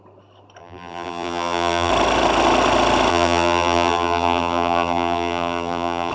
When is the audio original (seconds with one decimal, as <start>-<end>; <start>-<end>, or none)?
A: 0.0-0.6; 1.9-3.1